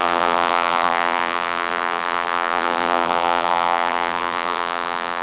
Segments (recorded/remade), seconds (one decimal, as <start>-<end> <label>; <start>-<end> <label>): 0.0-5.2 remade